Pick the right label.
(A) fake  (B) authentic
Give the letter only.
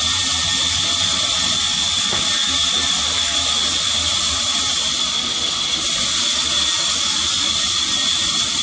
B